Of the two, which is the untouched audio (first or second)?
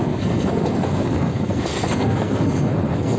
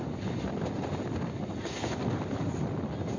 second